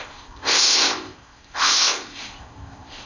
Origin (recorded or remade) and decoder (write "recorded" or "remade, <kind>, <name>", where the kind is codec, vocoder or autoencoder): remade, codec, ZipCodec